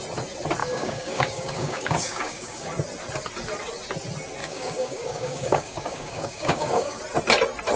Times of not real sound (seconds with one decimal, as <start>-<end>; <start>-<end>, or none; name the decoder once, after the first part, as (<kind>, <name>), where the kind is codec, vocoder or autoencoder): 0.6-2.7 (codec, DAC); 4.4-7.0